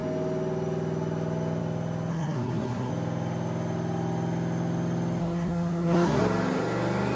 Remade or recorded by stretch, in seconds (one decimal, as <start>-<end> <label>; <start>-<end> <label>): 0.0-2.1 recorded; 2.1-2.9 remade; 2.9-5.2 recorded; 5.2-6.2 remade; 6.2-7.2 recorded